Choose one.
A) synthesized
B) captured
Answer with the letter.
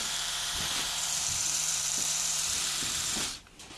A